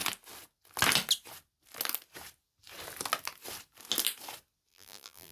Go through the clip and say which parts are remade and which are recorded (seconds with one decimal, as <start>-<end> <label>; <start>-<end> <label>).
0.0-4.7 recorded; 4.7-5.3 remade